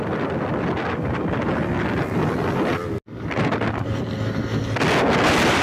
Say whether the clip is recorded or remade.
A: recorded